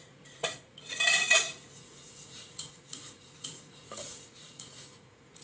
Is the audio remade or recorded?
remade